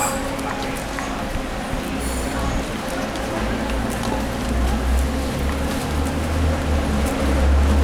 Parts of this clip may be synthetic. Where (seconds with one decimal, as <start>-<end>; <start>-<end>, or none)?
none